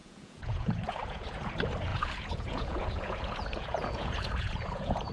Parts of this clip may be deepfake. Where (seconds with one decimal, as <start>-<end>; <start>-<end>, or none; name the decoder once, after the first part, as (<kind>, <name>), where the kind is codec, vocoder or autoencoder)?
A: 0.0-1.5 (vocoder, Vocos); 1.9-5.1